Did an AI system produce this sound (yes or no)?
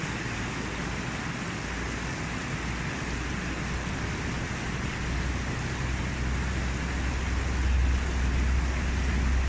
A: no